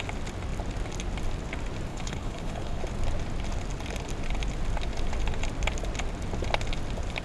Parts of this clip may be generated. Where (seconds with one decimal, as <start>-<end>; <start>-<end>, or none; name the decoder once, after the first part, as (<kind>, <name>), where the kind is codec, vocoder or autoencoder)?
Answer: 1.9-2.8 (codec, HILCodec)